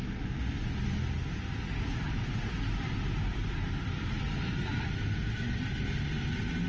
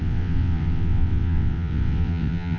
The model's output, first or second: second